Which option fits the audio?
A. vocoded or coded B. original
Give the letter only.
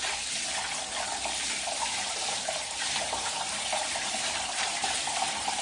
A